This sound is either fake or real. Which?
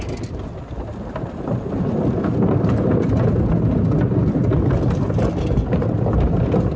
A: real